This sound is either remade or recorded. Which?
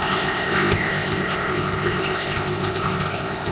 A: remade